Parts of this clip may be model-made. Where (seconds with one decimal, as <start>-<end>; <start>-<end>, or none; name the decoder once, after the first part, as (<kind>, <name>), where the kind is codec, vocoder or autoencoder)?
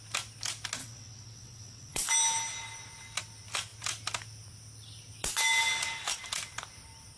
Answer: 0.8-2.1 (vocoder, WaveNeXt)